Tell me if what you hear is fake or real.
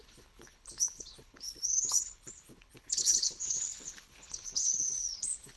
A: fake